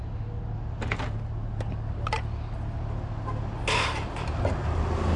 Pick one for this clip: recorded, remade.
recorded